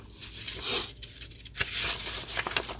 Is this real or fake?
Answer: real